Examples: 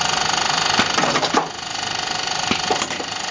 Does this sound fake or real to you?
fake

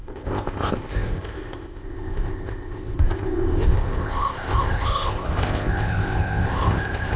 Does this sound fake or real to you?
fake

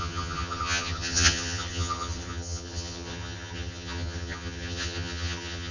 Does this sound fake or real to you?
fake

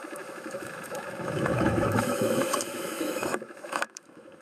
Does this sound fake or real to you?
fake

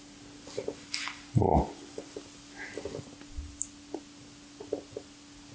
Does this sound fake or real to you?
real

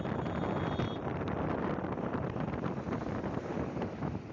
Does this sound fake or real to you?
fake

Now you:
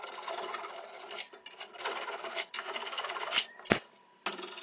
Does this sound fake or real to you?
real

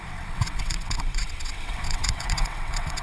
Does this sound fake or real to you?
fake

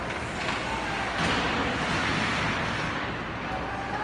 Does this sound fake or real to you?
real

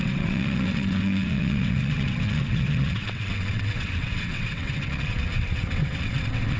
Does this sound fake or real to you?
fake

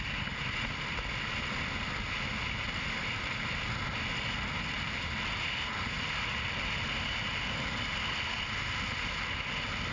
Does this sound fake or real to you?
real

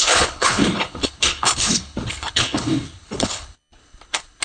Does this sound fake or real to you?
fake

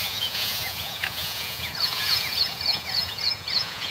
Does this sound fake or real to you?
fake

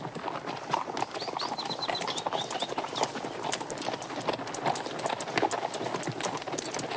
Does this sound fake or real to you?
real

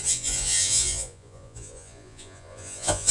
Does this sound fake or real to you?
fake